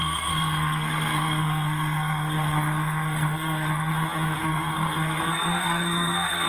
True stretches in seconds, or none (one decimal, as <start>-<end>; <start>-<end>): 3.9-4.4